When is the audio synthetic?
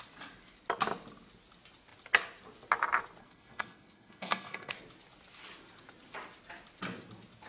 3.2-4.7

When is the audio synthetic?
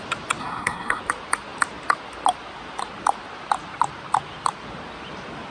0.4-1.0